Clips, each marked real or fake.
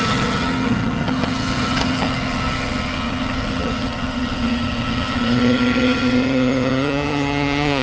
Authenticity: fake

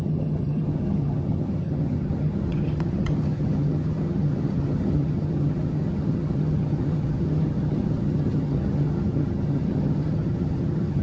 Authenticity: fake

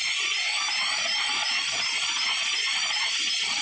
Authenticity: real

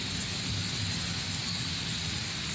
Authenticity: real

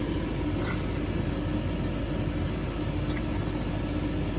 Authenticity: real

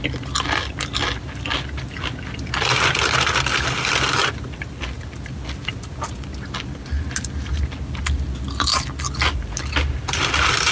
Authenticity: real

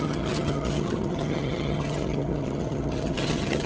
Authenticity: fake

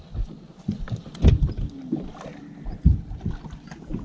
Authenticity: real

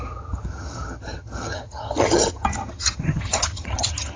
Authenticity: fake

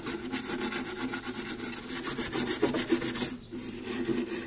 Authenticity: real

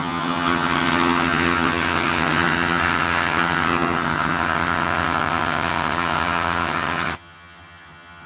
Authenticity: fake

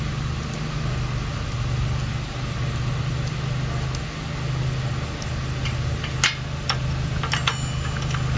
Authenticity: real